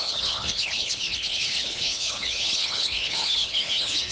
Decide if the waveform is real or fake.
fake